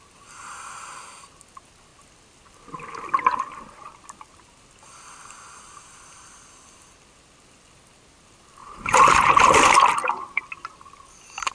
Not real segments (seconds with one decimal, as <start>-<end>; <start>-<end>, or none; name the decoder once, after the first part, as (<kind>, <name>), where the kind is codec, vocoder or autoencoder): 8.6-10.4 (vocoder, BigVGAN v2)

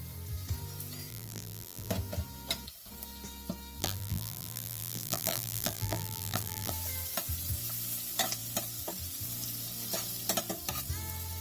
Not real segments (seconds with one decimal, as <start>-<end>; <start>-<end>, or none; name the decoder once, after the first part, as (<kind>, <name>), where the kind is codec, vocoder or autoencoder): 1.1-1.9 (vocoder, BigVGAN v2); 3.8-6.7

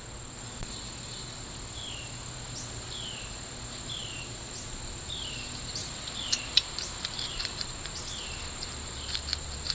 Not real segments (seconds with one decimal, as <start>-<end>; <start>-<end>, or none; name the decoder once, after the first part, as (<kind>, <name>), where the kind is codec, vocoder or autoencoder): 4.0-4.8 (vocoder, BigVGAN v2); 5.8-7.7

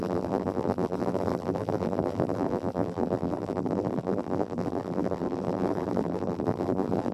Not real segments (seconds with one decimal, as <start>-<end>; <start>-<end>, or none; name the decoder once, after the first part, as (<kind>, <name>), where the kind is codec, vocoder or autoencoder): 0.0-7.1 (vocoder, BigVGAN v2)

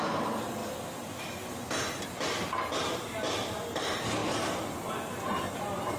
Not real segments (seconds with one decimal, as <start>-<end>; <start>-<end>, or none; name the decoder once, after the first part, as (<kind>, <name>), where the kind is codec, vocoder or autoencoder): none

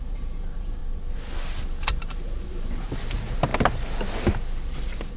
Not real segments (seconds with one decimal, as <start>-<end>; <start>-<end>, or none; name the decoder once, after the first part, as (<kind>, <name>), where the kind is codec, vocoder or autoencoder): 0.0-0.8 (vocoder, BigVGAN v2); 2.0-3.5; 4.7-5.2

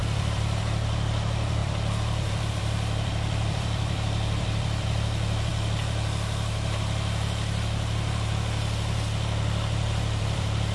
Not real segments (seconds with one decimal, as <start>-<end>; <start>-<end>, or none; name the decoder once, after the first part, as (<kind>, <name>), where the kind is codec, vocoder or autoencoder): 0.0-5.5 (vocoder, BigVGAN v2); 10.2-10.7

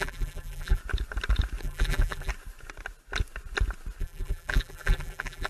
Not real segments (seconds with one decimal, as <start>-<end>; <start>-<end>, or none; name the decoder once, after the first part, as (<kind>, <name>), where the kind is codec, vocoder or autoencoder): 0.0-0.8 (vocoder, BigVGAN v2); 1.6-2.3; 4.0-5.5